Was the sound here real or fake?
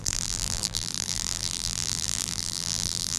fake